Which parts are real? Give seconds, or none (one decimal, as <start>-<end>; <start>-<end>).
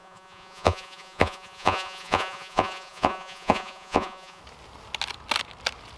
4.4-6.0